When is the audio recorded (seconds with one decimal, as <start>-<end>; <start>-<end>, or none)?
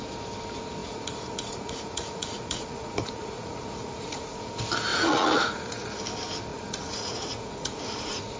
0.0-0.8; 4.5-4.9; 6.0-6.5